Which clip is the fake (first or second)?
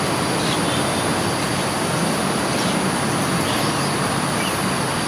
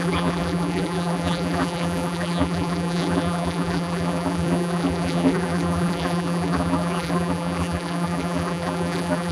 second